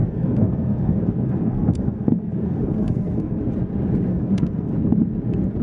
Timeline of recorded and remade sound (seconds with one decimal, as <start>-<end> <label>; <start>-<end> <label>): 0.0-3.4 remade; 3.4-4.1 recorded; 4.1-4.7 remade; 4.7-5.6 recorded